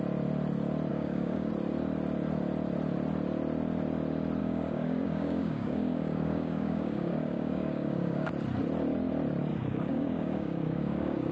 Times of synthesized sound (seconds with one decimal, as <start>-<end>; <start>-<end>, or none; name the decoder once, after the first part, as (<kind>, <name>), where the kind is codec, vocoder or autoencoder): 0.9-1.5 (codec, DAC); 4.4-8.3; 9.5-11.3